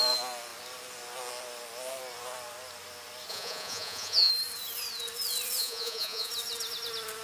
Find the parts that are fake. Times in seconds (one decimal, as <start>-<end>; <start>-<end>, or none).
3.3-4.3; 5.6-6.3